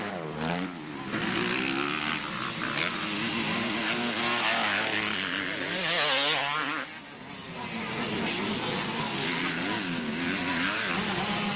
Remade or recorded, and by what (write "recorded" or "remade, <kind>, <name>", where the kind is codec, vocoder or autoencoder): recorded